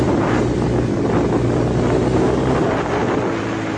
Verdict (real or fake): real